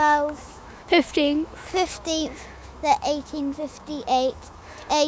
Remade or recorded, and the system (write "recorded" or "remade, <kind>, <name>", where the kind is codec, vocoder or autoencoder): remade, autoencoder, DAC-VAE